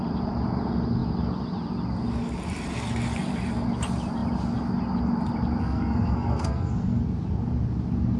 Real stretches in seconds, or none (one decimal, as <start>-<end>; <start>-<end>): 0.0-5.6; 7.0-8.2